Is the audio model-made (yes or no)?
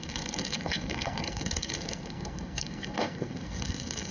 yes